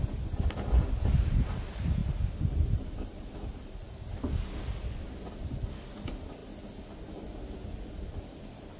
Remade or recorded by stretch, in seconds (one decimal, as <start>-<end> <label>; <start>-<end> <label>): 0.0-8.8 recorded